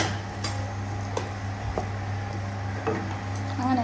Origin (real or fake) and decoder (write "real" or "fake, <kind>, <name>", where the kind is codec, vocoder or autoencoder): real